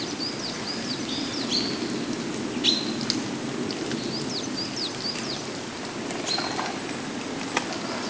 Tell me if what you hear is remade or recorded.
recorded